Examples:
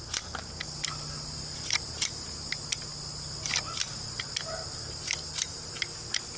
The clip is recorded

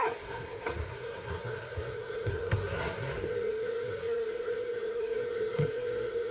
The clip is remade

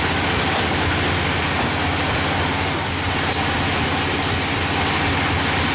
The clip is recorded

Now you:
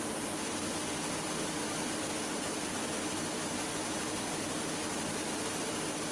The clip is recorded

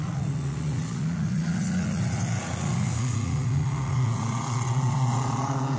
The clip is remade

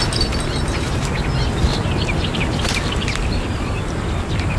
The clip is recorded